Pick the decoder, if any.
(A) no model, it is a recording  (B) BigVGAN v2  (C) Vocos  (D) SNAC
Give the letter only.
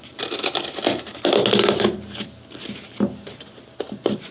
A